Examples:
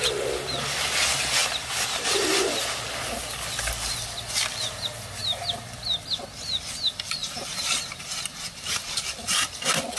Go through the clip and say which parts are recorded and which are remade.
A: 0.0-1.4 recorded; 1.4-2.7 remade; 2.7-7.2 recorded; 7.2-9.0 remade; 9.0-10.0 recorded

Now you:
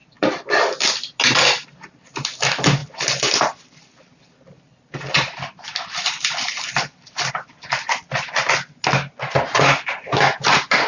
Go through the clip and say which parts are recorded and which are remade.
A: 0.0-2.8 recorded; 2.8-7.3 remade; 7.3-10.9 recorded

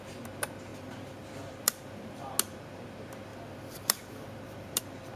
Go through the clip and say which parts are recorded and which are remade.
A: 0.0-0.7 recorded; 0.7-2.3 remade; 2.3-3.3 recorded; 3.3-4.8 remade; 4.8-5.2 recorded

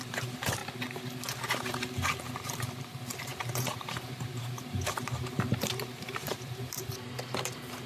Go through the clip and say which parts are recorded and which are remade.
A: 0.0-0.6 remade; 0.6-2.4 recorded; 2.4-7.9 remade

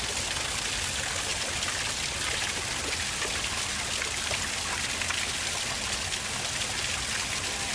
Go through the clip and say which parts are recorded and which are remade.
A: 0.0-7.7 recorded

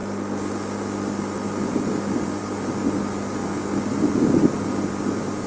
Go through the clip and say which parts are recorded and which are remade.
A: 0.0-5.5 recorded